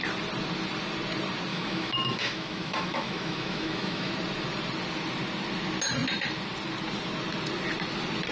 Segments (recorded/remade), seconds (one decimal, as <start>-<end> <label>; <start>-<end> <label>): 0.0-1.5 recorded; 1.5-4.1 remade; 4.1-8.3 recorded